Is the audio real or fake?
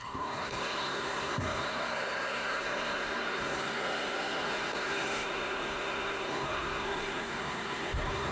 fake